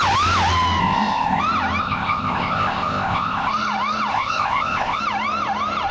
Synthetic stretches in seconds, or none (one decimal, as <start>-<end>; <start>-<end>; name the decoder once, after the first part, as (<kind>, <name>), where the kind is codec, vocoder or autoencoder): 0.8-1.4 (codec, ZipCodec); 1.8-3.5; 4.1-5.0